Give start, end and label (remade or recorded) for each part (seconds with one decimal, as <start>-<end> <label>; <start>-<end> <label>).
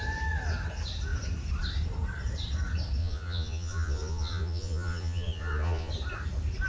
0.0-3.0 recorded; 3.0-5.9 remade; 5.9-6.7 recorded